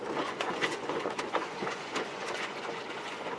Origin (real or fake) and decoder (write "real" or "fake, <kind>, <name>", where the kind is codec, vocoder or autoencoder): fake, vocoder, Vocos